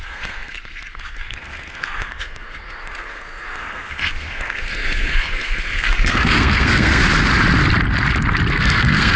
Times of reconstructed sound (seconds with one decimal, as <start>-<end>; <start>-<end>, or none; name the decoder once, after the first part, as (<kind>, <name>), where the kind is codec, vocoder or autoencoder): 0.0-7.0 (codec, SNAC); 8.5-9.2